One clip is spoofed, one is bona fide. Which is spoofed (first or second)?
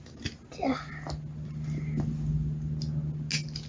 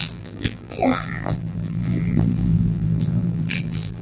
second